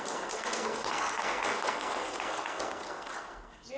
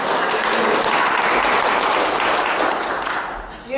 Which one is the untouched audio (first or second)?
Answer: second